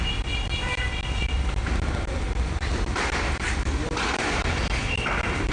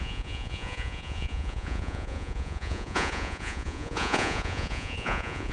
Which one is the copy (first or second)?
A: second